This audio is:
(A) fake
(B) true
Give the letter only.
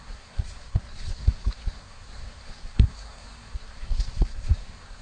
A